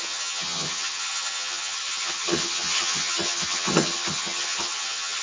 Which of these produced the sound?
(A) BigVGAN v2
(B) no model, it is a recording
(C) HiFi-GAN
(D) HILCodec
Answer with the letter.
C